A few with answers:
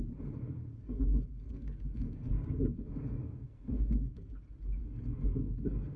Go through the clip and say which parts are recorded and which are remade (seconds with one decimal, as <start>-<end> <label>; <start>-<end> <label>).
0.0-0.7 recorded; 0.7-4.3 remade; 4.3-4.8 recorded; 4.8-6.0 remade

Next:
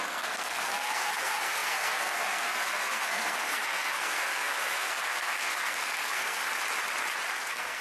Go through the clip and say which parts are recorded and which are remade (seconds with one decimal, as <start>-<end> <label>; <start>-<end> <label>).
0.0-6.4 remade; 6.4-7.3 recorded; 7.3-7.8 remade

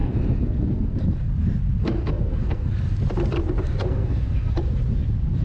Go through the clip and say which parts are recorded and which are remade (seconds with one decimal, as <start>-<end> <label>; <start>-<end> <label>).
0.0-1.0 remade; 1.0-1.8 recorded; 1.8-2.7 remade; 2.7-3.8 recorded; 3.8-4.5 remade; 4.5-5.4 recorded

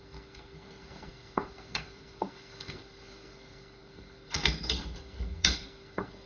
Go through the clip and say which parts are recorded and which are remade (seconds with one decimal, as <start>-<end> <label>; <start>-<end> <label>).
0.0-6.3 remade

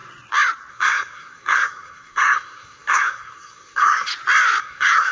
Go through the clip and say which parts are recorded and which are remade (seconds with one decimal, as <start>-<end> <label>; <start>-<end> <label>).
0.0-0.7 recorded; 0.7-4.1 remade; 4.1-4.6 recorded; 4.6-5.1 remade

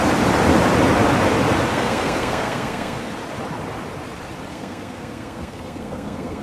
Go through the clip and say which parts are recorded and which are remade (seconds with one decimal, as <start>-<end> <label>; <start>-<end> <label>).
0.0-1.7 recorded; 1.7-3.1 remade; 3.1-4.5 recorded; 4.5-6.4 remade